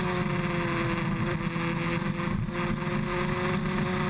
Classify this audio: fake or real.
real